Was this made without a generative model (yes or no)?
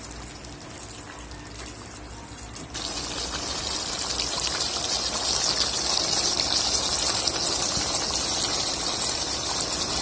yes